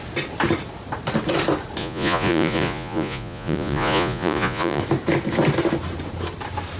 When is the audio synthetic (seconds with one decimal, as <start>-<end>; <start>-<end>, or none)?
1.8-4.8

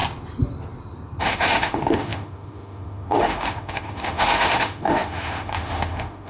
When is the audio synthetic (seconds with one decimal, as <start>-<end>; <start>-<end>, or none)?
1.2-6.3

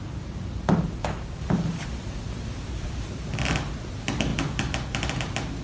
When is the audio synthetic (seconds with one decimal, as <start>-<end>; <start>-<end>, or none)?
none